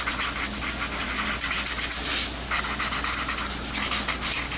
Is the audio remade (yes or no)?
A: no